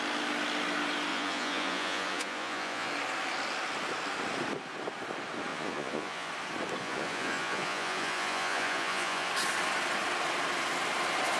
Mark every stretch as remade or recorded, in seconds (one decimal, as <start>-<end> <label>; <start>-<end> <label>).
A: 0.0-1.1 recorded; 1.1-2.9 remade; 2.9-5.5 recorded; 5.5-6.3 remade; 6.3-6.8 recorded; 6.8-9.3 remade; 9.3-11.4 recorded